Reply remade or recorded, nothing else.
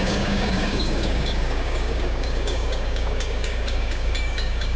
remade